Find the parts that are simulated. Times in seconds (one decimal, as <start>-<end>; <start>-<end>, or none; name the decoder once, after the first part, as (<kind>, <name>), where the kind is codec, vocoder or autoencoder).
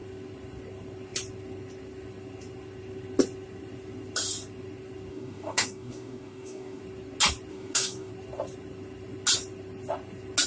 5.1-6.8 (codec, DAC); 7.5-8.1